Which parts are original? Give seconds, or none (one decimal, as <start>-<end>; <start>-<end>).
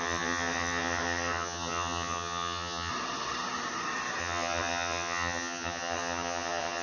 2.9-4.2